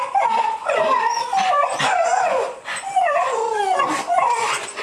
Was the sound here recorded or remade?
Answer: remade